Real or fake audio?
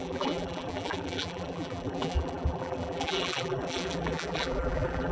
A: fake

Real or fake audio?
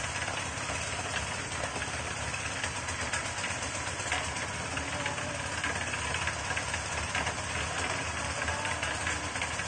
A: real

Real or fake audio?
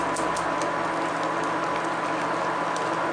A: real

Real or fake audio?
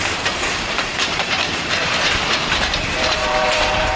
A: fake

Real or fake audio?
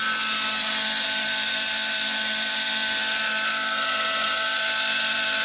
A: real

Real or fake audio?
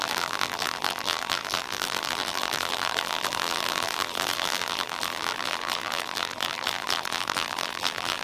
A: fake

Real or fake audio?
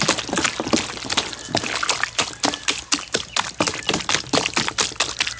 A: real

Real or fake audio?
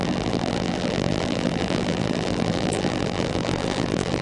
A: fake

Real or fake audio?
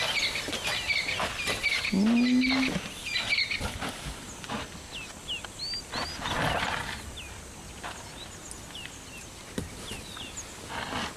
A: real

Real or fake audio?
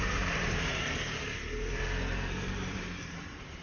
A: fake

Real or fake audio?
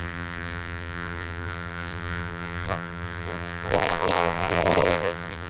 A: fake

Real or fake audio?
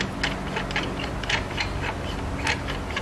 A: real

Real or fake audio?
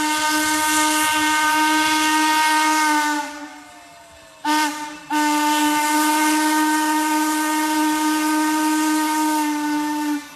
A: real